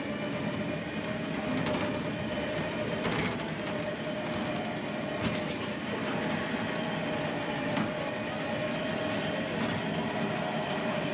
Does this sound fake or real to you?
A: real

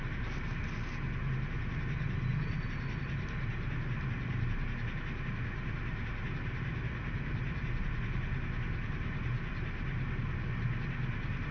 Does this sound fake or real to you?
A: real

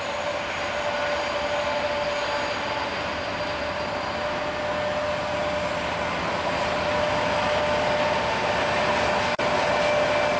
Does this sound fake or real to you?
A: real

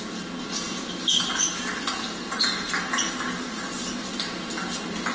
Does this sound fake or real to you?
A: real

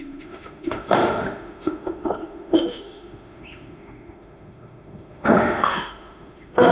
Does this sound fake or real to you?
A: fake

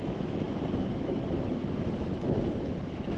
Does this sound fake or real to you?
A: fake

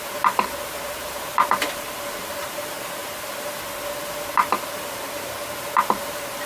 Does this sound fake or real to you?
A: real